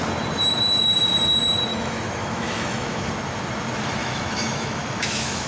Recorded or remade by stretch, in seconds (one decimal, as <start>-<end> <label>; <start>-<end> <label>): 0.0-1.7 recorded; 1.7-3.1 remade; 3.1-4.0 recorded; 4.0-5.5 remade